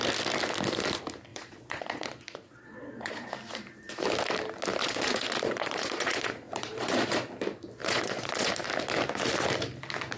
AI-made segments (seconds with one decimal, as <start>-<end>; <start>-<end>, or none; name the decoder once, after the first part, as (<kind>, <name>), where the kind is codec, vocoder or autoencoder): 1.3-3.3 (vocoder, Vocos); 4.8-7.3; 7.8-8.5